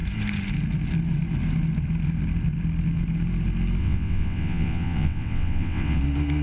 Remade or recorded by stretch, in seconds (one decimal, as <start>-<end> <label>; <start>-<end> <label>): 0.0-3.8 recorded; 3.8-6.0 remade; 6.0-6.4 recorded